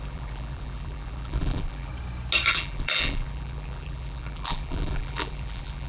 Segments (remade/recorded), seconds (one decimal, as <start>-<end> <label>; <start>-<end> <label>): 0.0-1.9 remade; 1.9-2.5 recorded; 2.5-5.9 remade